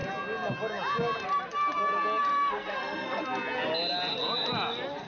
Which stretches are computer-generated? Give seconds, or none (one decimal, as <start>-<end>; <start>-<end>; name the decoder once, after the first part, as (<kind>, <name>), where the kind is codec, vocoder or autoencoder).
2.2-3.2 (codec, SNAC)